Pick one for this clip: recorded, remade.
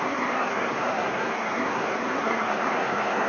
remade